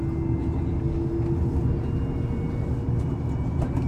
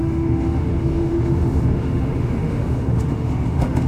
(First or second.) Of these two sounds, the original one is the first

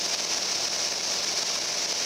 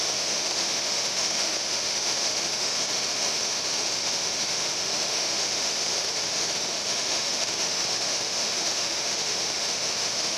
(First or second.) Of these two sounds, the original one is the first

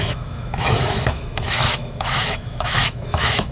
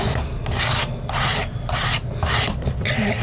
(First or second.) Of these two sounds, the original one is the second